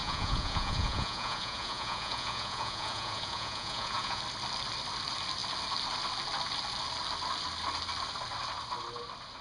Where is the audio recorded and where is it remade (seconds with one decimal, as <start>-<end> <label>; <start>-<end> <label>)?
0.0-4.2 remade; 4.2-9.4 recorded